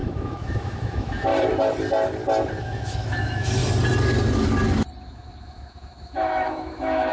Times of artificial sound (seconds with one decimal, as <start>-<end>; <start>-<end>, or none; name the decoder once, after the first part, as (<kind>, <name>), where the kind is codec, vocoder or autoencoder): 0.0-1.3 (autoencoder, DAC-VAE); 2.6-3.6; 5.0-7.1